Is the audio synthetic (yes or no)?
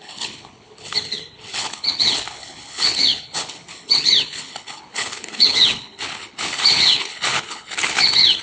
yes